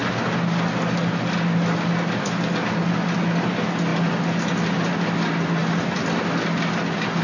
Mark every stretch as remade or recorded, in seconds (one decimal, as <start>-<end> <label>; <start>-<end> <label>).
0.0-7.2 recorded

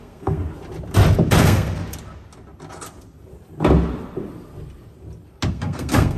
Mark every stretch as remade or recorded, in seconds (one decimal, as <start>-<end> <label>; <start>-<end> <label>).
0.0-0.4 remade; 0.4-1.4 recorded; 1.4-1.8 remade; 1.8-5.5 recorded; 5.5-6.2 remade

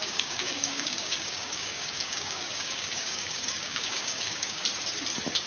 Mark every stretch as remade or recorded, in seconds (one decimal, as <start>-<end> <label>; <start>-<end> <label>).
0.0-4.6 remade; 4.6-5.5 recorded